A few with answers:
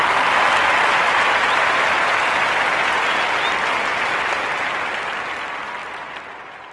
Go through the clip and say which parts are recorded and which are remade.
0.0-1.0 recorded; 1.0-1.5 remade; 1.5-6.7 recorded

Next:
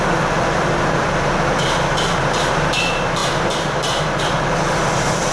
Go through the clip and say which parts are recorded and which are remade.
0.0-5.3 remade

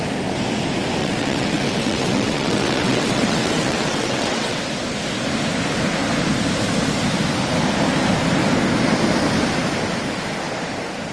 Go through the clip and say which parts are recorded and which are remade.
0.0-1.0 recorded; 1.0-4.6 remade; 4.6-11.1 recorded